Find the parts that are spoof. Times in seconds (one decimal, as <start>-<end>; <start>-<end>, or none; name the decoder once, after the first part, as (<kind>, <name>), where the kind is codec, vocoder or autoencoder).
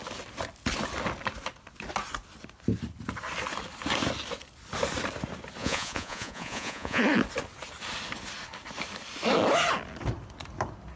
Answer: 5.6-7.0 (vocoder, Vocos)